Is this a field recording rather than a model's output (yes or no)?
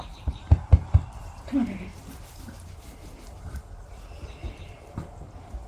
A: yes